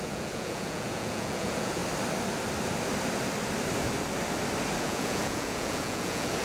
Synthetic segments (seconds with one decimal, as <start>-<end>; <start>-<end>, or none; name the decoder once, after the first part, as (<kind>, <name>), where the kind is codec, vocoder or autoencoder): 0.0-1.8 (vocoder, Vocos); 4.8-6.4